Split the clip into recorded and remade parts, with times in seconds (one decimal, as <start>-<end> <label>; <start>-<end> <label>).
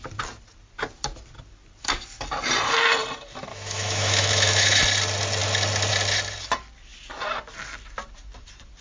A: 0.0-3.5 recorded; 3.5-4.8 remade; 4.8-8.8 recorded